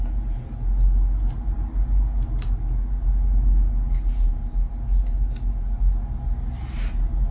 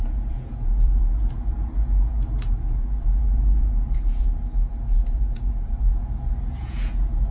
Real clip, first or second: first